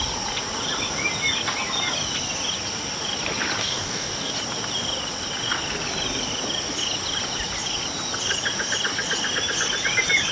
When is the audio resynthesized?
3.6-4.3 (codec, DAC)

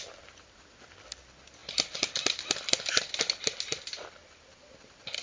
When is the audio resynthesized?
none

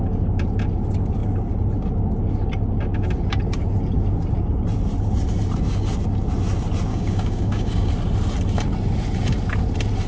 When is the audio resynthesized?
6.9-7.9 (codec, DAC)